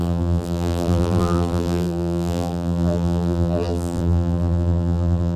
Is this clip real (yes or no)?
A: no